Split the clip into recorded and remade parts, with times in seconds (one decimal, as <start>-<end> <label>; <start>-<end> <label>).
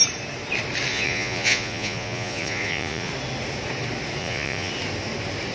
0.0-0.9 recorded; 0.9-3.1 remade; 3.1-4.2 recorded; 4.2-4.7 remade; 4.7-5.5 recorded